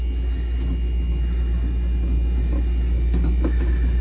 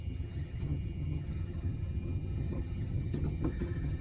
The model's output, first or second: second